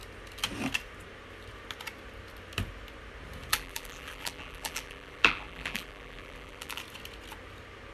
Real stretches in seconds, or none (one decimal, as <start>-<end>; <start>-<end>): 0.0-3.5; 6.8-7.9